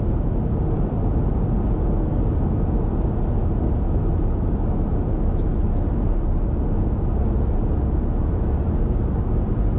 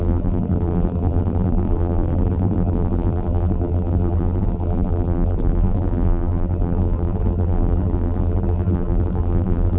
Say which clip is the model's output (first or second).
second